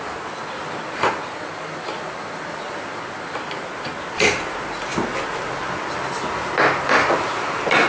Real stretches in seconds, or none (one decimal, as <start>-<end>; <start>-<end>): 0.0-7.9